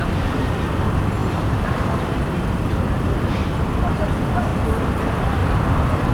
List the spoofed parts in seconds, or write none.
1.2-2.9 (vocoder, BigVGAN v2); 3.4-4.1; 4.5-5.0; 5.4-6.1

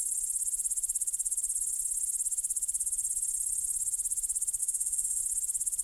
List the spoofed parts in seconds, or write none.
4.6-5.2 (autoencoder, DAC-VAE)

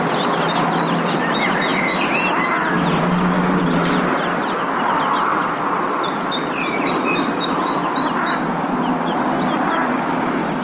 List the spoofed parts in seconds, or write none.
none

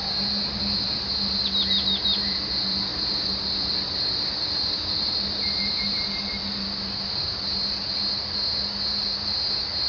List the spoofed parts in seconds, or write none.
2.9-5.6 (vocoder, BigVGAN v2)